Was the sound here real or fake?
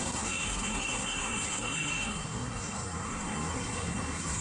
fake